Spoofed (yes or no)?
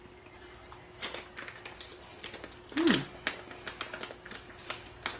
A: no